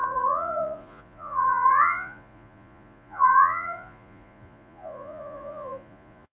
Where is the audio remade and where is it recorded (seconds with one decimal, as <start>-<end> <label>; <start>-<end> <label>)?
0.0-6.3 remade